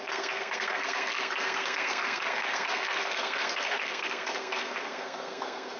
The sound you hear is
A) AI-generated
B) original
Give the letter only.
A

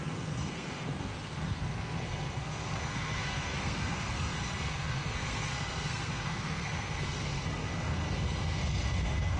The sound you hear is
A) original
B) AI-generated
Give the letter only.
B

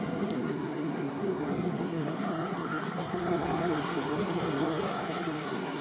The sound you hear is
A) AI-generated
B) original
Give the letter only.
A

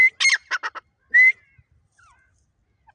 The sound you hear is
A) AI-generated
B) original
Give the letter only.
B